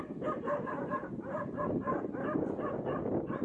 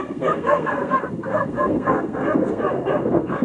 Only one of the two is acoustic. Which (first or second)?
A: first